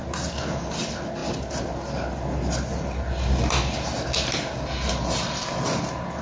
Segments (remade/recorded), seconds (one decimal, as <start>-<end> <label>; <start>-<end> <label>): 0.0-6.2 recorded